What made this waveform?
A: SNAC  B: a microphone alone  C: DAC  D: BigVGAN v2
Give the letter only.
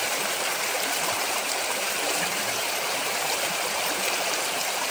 D